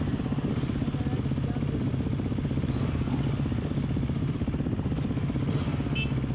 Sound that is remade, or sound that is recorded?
recorded